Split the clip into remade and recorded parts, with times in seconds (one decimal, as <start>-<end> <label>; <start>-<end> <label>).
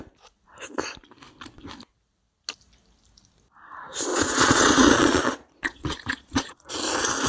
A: 0.0-4.1 recorded; 4.1-6.7 remade; 6.7-7.3 recorded